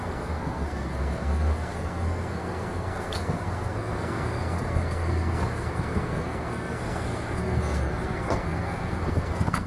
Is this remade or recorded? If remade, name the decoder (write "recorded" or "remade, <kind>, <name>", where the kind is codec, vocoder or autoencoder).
remade, codec, SNAC